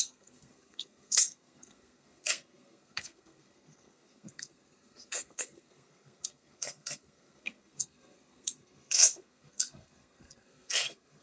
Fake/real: fake